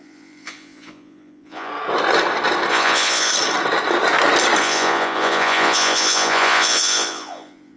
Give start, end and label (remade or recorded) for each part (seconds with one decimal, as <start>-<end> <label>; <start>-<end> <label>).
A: 0.0-1.7 remade; 1.7-2.7 recorded; 2.7-3.3 remade; 3.3-4.6 recorded; 4.6-7.8 remade